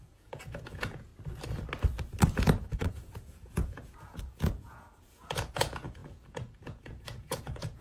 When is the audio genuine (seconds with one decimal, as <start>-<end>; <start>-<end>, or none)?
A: 1.1-2.9